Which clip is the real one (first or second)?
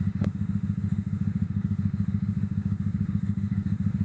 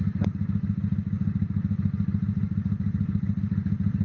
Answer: second